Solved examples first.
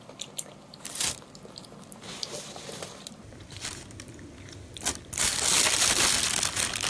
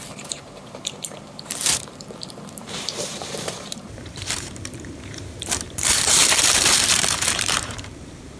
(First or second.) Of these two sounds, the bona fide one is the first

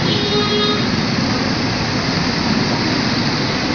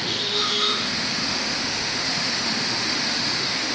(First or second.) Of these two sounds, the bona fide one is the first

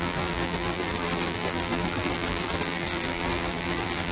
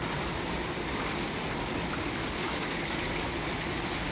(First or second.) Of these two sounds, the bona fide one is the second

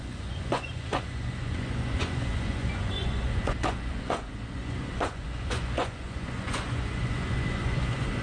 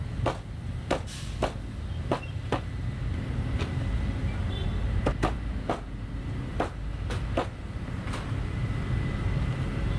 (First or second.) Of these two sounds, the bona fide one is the second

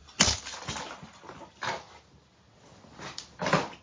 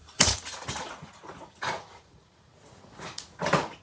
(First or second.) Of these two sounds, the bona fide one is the first